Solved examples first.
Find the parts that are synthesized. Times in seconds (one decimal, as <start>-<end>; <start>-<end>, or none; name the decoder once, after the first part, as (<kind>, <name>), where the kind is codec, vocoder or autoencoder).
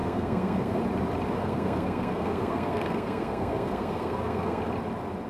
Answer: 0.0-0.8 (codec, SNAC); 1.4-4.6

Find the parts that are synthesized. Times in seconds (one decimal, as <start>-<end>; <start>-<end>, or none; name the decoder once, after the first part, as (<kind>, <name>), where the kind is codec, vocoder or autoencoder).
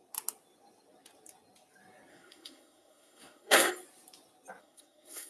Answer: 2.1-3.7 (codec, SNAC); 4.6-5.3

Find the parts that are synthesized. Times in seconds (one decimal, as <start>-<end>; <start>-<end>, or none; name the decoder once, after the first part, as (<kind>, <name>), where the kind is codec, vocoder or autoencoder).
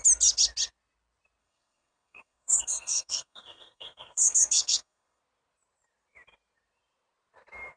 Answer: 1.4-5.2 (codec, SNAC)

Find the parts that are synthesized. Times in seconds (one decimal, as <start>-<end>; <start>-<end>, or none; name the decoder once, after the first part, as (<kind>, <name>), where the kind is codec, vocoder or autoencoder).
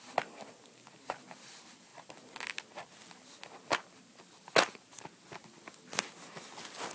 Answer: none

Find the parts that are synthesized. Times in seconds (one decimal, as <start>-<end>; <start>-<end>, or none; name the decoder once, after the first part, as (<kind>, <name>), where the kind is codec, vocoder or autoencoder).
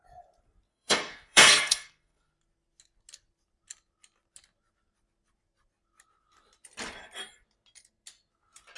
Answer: 0.7-2.3 (codec, SNAC)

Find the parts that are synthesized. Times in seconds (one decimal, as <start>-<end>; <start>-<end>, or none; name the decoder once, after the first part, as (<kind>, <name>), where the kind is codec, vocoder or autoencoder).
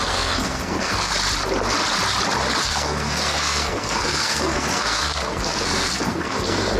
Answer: 0.0-1.1 (codec, SNAC); 2.6-6.8